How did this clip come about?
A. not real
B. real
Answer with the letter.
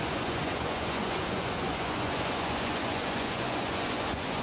A